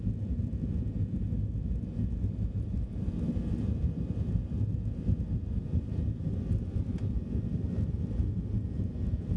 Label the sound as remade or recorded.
recorded